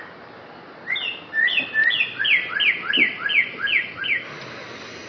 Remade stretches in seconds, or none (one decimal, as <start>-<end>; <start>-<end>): none